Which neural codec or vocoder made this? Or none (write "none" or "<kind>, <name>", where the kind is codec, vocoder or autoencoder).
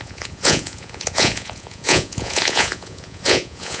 vocoder, Vocos